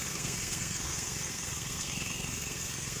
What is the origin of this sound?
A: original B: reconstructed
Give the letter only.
B